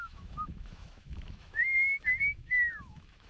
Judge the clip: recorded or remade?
remade